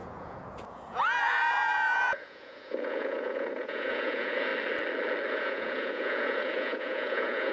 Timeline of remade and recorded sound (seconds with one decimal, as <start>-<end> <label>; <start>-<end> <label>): 0.0-4.5 remade; 4.5-5.3 recorded; 5.3-7.5 remade